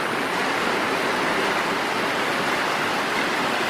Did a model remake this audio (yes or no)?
no